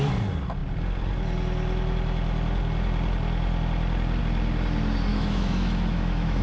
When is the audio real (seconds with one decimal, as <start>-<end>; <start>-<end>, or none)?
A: 0.0-5.1